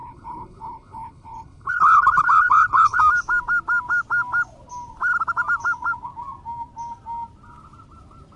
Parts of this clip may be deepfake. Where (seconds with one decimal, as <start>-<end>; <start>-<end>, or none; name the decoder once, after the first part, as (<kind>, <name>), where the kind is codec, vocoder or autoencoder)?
0.0-3.0 (codec, HILCodec)